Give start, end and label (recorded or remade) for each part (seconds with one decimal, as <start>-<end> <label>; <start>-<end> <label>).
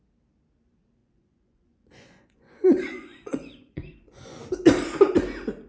0.0-1.0 recorded; 1.0-4.4 remade; 4.4-5.7 recorded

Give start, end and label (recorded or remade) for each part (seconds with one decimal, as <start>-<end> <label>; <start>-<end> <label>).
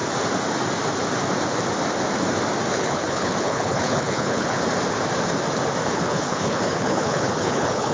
0.0-2.7 recorded; 2.7-4.6 remade; 4.6-5.8 recorded; 5.8-7.9 remade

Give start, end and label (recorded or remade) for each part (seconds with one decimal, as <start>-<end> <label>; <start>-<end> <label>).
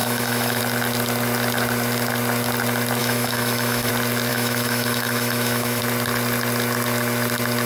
0.0-0.6 remade; 0.6-3.0 recorded; 3.0-3.9 remade; 3.9-4.3 recorded; 4.3-5.8 remade; 5.8-7.7 recorded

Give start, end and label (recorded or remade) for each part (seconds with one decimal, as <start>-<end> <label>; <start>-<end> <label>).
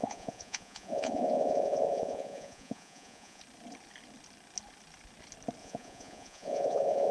0.0-3.4 remade; 3.4-5.6 recorded; 5.6-7.1 remade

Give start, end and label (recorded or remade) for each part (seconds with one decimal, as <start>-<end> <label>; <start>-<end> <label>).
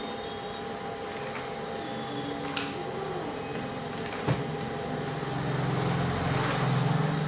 0.0-7.3 recorded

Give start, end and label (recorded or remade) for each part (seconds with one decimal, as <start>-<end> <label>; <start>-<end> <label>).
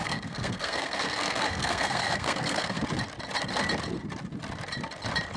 0.0-2.8 remade; 2.8-5.4 recorded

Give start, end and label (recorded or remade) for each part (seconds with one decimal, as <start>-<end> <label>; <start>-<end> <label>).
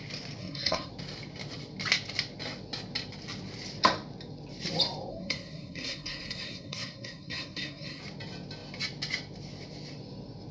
0.0-0.4 recorded; 0.4-0.9 remade; 0.9-5.1 recorded; 5.1-8.0 remade; 8.0-10.5 recorded